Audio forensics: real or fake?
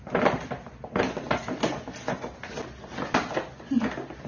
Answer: real